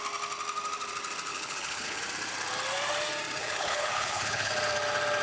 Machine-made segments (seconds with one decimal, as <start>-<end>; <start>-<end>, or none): 1.3-2.0; 3.4-4.5